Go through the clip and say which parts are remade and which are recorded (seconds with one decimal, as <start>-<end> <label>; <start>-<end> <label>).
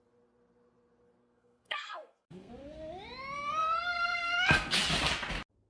0.0-1.2 recorded; 1.2-2.5 remade; 2.5-3.5 recorded; 3.5-4.8 remade; 4.8-5.7 recorded